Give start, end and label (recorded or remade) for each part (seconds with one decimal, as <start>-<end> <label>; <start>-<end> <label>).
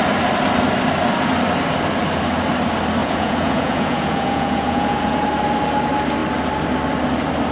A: 0.0-3.0 recorded; 3.0-5.2 remade; 5.2-7.5 recorded